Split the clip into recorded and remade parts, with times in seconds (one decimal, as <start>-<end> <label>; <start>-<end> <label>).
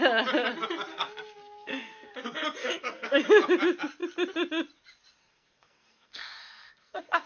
0.0-0.9 recorded; 0.9-2.1 remade; 2.1-2.6 recorded; 2.6-3.2 remade; 3.2-5.2 recorded; 5.2-7.3 remade